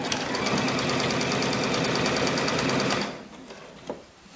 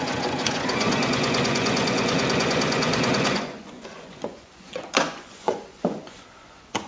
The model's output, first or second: second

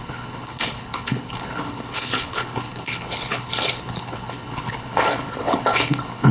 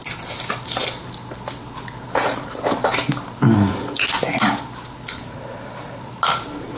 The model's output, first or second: first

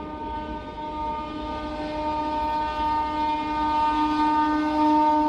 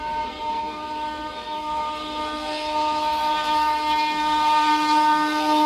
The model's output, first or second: second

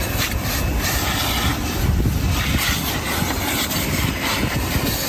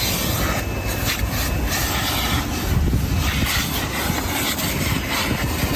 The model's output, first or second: first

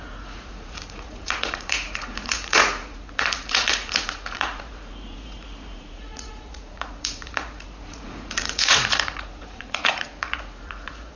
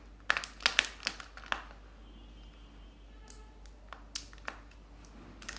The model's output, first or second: first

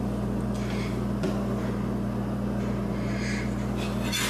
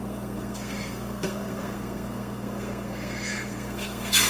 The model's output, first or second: second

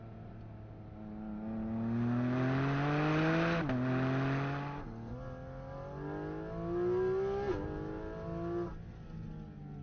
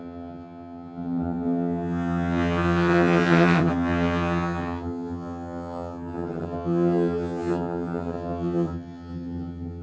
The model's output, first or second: second